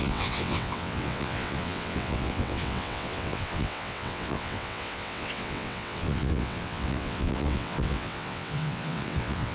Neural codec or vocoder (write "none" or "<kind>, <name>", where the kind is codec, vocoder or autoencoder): vocoder, WaveNeXt